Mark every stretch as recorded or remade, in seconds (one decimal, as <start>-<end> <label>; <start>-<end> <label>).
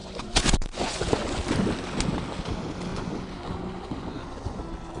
0.0-1.4 remade; 1.4-2.9 recorded; 2.9-4.6 remade; 4.6-5.0 recorded